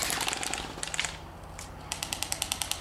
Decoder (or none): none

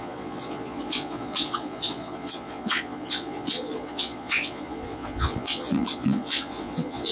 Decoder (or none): vocoder, Vocos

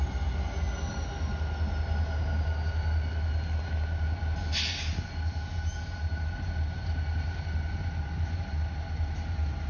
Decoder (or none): none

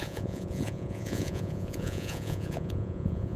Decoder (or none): vocoder, Vocos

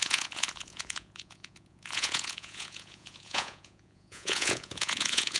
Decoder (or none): vocoder, Vocos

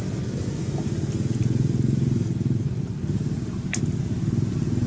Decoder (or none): none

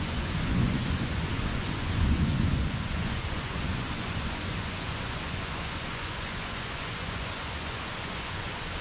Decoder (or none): vocoder, Vocos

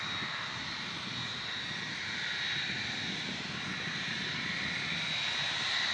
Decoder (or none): none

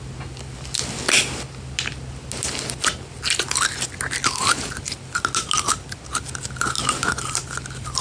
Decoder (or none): none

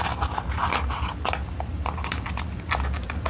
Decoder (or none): none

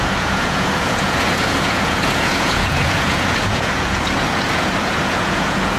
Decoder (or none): vocoder, Vocos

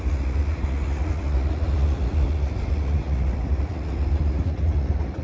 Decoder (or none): vocoder, Vocos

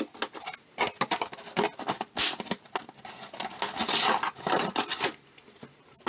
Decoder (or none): none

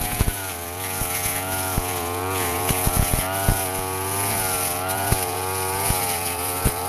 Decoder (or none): vocoder, Vocos